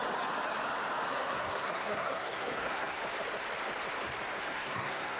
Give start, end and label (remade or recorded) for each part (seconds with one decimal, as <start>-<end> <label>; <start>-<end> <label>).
0.0-1.1 recorded; 1.1-3.0 remade; 3.0-4.4 recorded; 4.4-5.2 remade